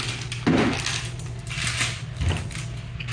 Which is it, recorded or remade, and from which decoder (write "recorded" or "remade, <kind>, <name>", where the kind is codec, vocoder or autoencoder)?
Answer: recorded